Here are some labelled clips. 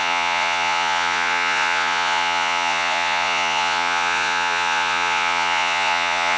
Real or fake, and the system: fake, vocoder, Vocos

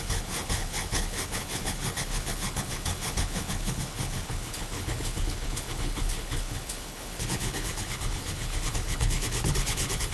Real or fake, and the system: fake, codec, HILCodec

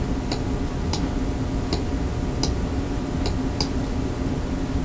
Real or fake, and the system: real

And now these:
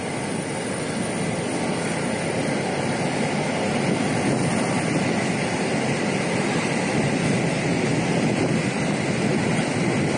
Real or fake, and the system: real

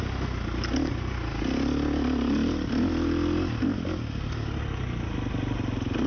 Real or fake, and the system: real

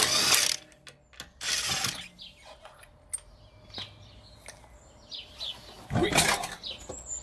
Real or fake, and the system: real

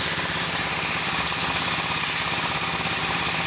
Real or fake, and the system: fake, vocoder, BigVGAN v2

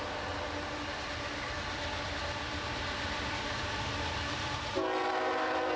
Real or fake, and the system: real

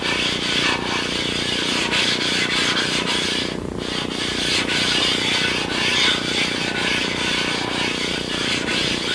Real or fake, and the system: real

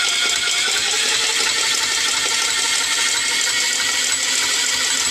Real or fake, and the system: real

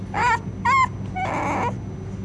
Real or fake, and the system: real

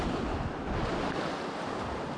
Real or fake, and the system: real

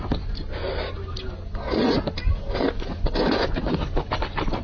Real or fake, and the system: real